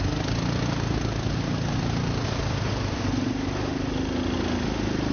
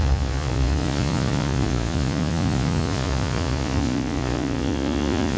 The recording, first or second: first